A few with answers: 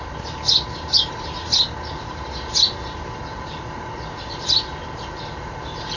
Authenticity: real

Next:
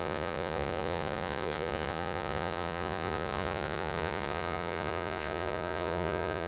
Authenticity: fake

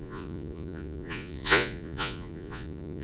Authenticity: fake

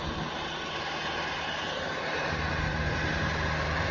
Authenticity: real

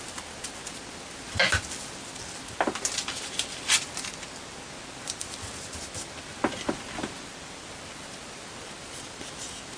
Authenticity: real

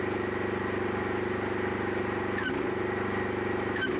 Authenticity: real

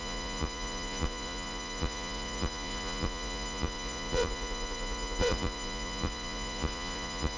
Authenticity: fake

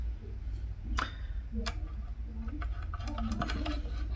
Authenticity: real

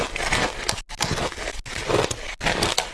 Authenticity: real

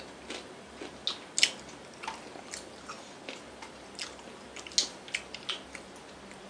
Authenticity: real